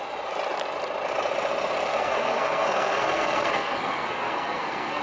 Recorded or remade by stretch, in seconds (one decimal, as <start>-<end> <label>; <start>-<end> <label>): 0.0-1.9 recorded; 1.9-5.0 remade